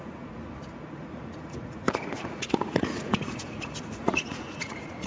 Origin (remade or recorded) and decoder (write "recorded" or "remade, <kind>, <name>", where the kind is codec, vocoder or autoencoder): remade, vocoder, Vocos